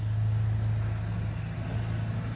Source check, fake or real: real